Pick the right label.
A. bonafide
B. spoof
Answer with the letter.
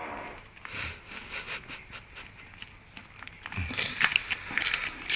A